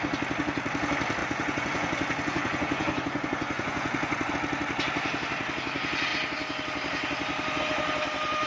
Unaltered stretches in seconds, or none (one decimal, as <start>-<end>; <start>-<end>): 0.0-1.2; 4.3-8.5